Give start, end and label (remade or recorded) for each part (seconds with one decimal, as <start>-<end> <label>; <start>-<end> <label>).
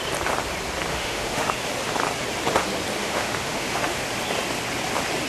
0.0-0.9 recorded; 0.9-1.5 remade; 1.5-3.0 recorded; 3.0-4.0 remade; 4.0-5.3 recorded